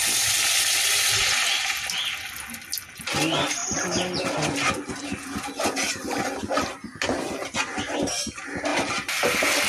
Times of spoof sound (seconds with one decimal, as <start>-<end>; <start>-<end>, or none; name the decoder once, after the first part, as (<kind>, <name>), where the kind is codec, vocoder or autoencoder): none